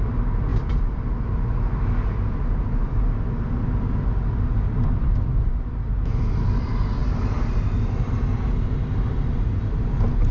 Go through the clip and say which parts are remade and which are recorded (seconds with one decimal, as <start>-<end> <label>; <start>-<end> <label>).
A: 0.0-10.3 recorded